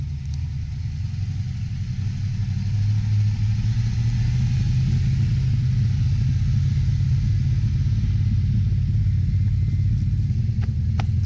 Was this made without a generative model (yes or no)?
yes